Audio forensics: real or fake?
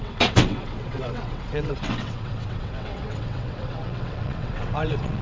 fake